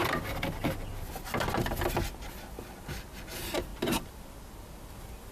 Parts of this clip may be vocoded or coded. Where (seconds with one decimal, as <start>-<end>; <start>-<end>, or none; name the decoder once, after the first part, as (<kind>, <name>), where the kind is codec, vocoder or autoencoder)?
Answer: 3.7-5.3 (vocoder, BigVGAN v2)